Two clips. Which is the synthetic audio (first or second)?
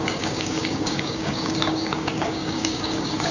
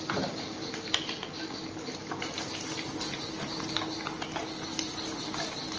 first